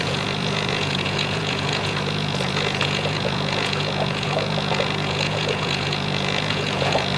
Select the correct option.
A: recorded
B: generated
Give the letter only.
B